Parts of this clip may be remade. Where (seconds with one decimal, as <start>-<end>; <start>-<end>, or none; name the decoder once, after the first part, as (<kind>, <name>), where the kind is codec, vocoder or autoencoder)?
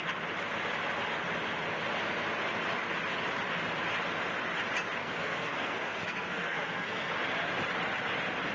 5.0-7.1 (codec, SNAC)